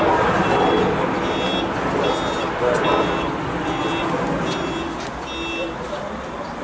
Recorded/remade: recorded